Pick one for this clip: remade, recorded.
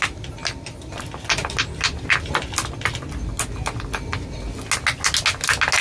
recorded